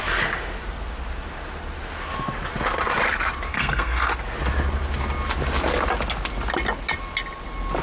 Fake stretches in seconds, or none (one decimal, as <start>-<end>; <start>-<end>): 3.5-4.1